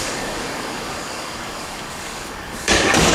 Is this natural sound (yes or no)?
no